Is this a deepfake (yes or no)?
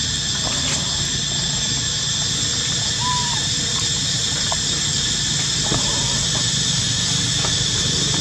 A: no